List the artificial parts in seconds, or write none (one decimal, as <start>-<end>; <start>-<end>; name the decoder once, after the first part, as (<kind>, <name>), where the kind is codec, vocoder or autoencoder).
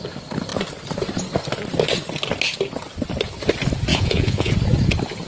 3.9-4.5 (vocoder, Vocos)